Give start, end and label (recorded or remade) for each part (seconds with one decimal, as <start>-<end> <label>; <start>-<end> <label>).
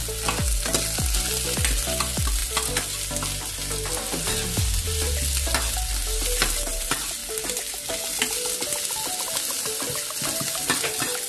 0.0-2.4 recorded; 2.4-3.9 remade; 3.9-7.2 recorded; 7.2-8.3 remade; 8.3-11.3 recorded